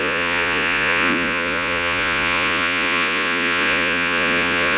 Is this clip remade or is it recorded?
remade